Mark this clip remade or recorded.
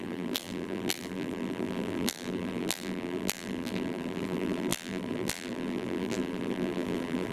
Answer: remade